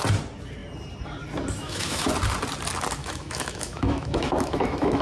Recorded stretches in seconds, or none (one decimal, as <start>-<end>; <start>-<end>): 0.0-1.6; 2.1-3.0